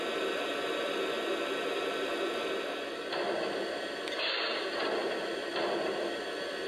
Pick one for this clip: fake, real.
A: real